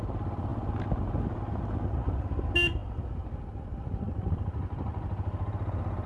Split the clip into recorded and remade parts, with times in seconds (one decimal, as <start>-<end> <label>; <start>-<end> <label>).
0.0-6.1 recorded